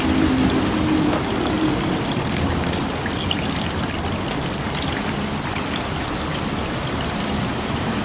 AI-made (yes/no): yes